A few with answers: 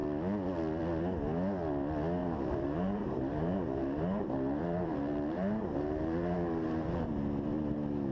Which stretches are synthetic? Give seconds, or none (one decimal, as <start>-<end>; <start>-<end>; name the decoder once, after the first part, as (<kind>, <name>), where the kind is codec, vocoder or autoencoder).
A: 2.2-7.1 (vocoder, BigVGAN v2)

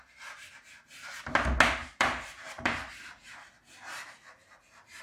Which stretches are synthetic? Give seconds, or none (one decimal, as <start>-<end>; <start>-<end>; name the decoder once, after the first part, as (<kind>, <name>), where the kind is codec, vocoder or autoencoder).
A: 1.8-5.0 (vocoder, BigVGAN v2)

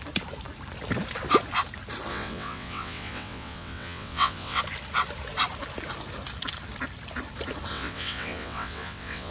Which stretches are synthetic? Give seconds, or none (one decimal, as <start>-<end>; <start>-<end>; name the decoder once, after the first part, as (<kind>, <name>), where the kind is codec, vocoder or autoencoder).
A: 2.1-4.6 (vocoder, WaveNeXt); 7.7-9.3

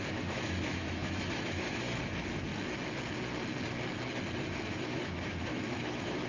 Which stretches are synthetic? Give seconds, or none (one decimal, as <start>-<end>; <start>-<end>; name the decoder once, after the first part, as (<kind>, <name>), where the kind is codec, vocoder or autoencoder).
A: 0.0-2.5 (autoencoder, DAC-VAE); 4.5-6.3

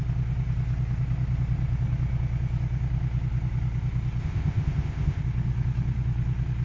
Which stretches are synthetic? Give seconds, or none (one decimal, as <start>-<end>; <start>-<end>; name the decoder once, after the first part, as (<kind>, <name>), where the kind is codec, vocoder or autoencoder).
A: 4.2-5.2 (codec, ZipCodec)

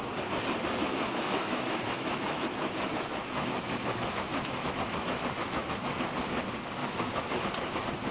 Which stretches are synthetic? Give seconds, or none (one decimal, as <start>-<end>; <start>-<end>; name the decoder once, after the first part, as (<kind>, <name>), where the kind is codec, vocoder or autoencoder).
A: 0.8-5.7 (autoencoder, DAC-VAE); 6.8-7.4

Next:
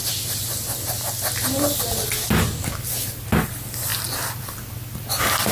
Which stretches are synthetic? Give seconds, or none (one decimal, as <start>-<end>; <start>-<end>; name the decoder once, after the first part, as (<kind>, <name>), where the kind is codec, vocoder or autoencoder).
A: none